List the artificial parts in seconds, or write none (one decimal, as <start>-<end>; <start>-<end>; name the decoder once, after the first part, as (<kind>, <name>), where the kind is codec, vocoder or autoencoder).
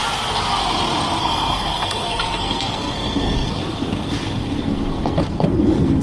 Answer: 1.2-6.0 (codec, SNAC)